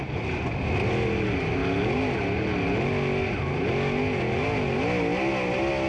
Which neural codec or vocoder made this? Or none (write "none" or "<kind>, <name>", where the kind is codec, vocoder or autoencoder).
none